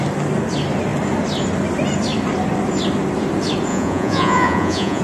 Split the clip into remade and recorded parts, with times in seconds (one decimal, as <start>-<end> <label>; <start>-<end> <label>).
0.0-3.7 recorded; 3.7-5.0 remade